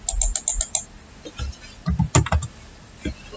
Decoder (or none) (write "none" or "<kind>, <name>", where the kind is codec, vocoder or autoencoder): none